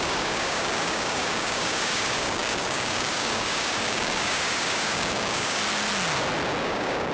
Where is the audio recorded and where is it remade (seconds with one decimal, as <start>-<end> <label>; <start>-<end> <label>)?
0.0-5.6 remade; 5.6-6.6 recorded; 6.6-7.1 remade